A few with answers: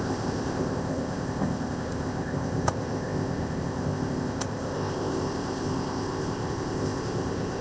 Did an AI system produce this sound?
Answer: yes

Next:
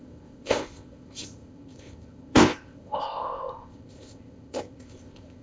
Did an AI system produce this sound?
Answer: yes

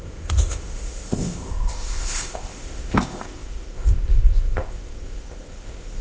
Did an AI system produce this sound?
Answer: yes